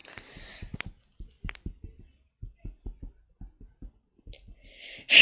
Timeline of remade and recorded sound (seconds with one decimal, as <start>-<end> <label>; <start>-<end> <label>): 0.0-5.2 recorded